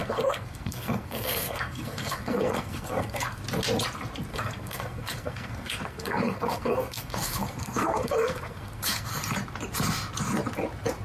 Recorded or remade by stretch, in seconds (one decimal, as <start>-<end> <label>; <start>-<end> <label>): 0.0-3.4 remade; 3.4-4.3 recorded; 4.3-9.1 remade; 9.1-11.0 recorded